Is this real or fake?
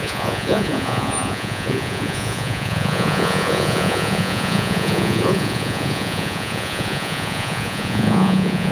fake